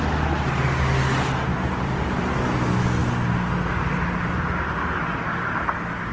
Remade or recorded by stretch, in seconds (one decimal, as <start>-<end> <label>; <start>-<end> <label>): 0.0-6.1 recorded

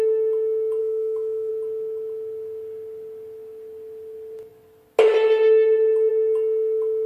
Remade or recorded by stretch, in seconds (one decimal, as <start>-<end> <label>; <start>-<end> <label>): 0.0-0.8 recorded; 0.8-1.5 remade; 1.5-7.1 recorded